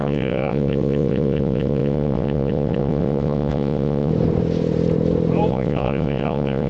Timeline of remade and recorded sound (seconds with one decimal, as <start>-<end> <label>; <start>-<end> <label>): 0.0-4.1 remade; 4.1-5.5 recorded; 5.5-6.7 remade